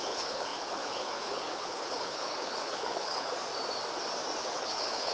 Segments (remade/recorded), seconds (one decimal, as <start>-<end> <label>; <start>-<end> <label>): 0.0-3.3 remade; 3.3-4.4 recorded; 4.4-5.1 remade